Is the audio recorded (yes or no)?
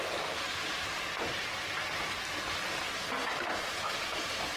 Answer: yes